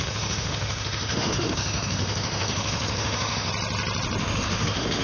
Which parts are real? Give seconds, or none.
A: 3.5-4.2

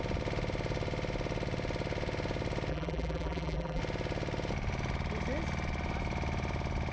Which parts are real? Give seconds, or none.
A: 0.0-2.7; 3.8-6.9

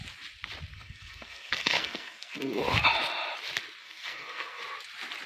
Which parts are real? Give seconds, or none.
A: 0.0-0.7; 2.6-3.8; 4.6-5.3

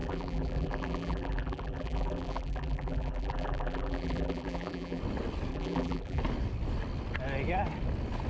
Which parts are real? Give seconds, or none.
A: 5.0-5.5; 6.2-8.3

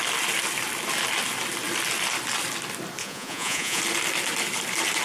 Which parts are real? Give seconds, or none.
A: 0.0-3.0; 3.8-5.0

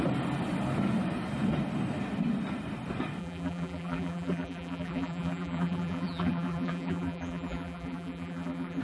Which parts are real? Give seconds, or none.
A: 0.0-3.2

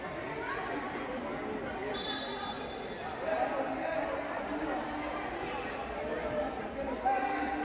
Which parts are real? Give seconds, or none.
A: 0.0-7.6